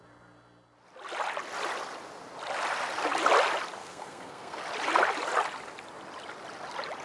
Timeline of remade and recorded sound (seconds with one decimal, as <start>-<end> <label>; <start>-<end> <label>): 0.0-3.8 recorded; 3.8-4.6 remade; 4.6-7.0 recorded